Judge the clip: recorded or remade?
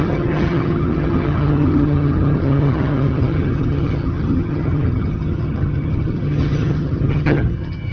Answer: remade